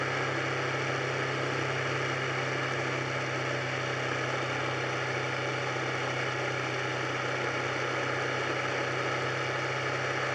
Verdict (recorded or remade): recorded